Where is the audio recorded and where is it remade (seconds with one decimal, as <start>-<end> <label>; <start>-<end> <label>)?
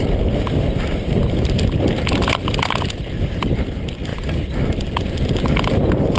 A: 0.0-6.2 recorded